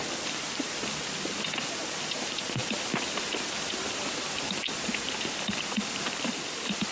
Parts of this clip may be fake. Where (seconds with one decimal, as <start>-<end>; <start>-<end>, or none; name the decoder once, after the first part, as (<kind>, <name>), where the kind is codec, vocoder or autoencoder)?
none